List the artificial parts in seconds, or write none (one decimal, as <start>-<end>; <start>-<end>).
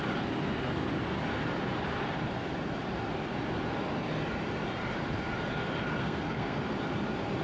6.0-6.6